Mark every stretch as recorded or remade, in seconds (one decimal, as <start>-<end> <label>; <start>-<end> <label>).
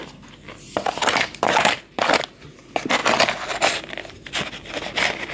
0.0-5.3 recorded